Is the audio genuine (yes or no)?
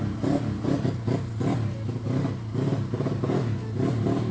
yes